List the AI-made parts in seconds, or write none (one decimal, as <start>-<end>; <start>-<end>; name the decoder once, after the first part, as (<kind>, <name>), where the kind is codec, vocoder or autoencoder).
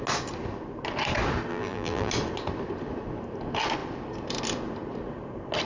1.5-2.1 (vocoder, BigVGAN v2)